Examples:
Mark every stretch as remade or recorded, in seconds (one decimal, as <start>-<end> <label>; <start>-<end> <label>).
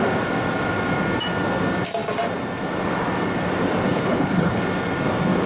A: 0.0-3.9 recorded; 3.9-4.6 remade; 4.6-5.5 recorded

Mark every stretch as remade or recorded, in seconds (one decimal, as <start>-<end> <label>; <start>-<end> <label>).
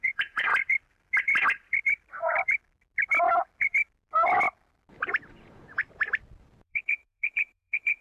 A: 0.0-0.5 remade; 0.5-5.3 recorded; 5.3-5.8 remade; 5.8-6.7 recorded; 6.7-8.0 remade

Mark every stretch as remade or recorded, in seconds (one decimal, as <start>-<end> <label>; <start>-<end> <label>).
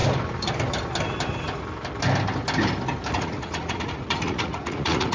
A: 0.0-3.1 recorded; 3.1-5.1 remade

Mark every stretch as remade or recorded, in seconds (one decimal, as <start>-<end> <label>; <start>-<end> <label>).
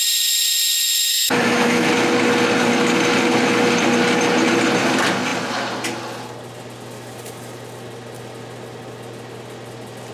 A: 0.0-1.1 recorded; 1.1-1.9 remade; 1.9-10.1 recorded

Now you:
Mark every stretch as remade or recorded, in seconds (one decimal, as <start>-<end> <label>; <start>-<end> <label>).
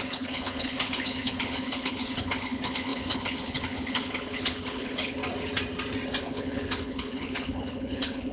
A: 0.0-5.2 remade; 5.2-6.2 recorded; 6.2-8.3 remade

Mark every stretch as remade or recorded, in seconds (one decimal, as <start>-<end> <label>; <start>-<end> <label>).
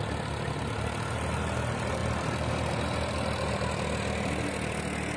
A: 0.0-5.2 recorded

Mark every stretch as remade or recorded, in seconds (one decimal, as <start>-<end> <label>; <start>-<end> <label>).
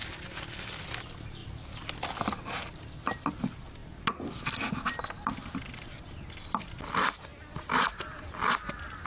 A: 0.0-0.8 remade; 0.8-9.1 recorded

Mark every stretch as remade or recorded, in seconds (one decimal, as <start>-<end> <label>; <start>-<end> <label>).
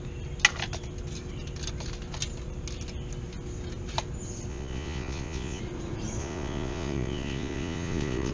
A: 0.0-4.5 recorded; 4.5-5.6 remade; 5.6-6.2 recorded; 6.2-8.3 remade